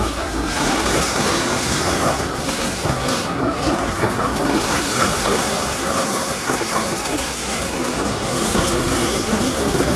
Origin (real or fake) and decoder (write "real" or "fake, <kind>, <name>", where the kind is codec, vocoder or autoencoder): fake, codec, SNAC